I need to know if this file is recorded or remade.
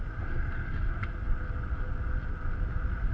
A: recorded